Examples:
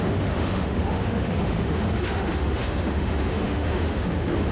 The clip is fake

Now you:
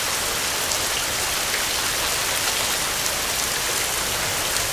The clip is real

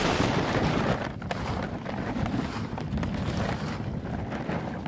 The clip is real